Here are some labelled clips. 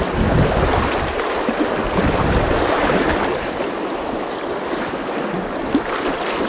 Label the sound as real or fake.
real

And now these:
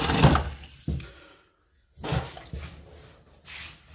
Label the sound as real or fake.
real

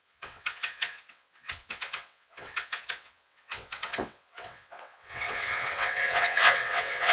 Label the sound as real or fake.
fake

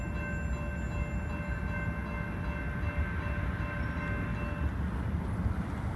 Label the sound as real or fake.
real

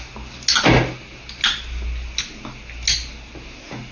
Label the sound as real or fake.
real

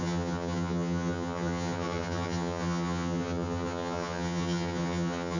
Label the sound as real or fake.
fake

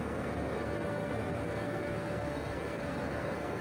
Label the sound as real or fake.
fake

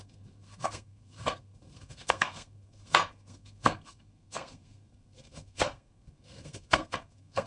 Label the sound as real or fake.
fake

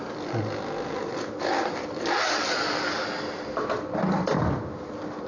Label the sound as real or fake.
real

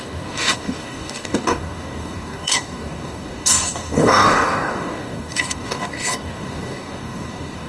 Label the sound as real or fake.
fake